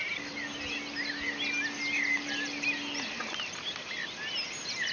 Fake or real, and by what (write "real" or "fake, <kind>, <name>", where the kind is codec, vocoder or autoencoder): real